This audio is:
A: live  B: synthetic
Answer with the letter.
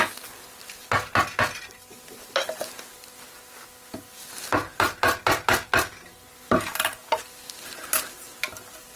A